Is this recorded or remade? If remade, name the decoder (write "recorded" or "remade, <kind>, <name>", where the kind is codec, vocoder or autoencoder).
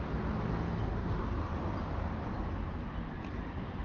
recorded